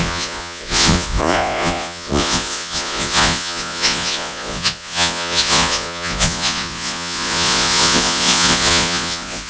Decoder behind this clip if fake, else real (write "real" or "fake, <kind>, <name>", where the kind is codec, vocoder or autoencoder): fake, vocoder, Vocos